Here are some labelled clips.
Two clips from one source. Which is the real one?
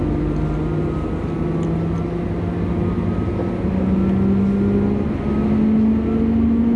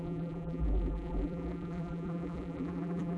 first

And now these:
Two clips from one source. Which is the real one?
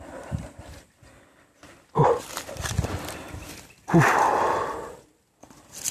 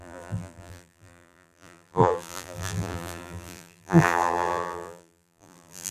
first